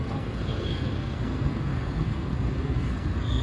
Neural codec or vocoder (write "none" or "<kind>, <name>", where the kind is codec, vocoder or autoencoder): codec, SNAC